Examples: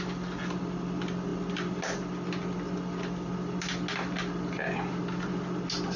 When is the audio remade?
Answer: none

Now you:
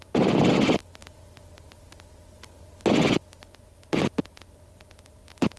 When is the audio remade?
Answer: none

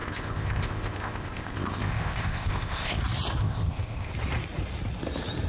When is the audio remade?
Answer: 0.0-3.0 (codec, ZipCodec); 3.4-4.1

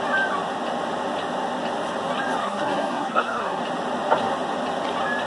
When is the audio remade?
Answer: 2.4-3.6 (codec, SNAC)